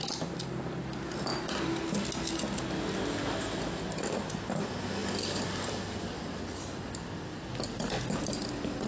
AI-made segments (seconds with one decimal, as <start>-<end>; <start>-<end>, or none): none